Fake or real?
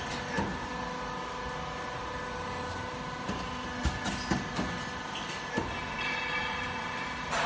real